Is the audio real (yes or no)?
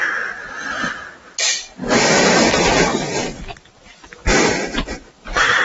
yes